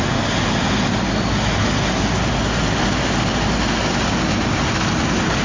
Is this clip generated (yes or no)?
no